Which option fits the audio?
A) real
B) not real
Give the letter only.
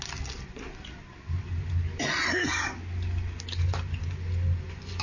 A